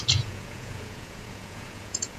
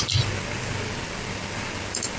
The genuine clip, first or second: second